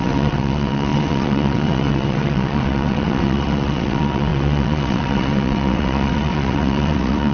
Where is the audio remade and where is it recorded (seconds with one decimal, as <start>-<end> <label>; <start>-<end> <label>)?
0.0-7.3 remade